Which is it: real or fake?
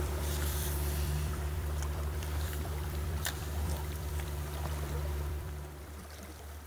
fake